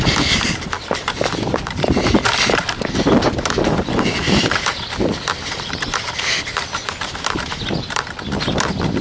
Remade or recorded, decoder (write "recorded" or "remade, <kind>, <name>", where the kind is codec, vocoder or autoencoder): remade, vocoder, BigVGAN v2